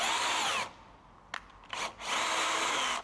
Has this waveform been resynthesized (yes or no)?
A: no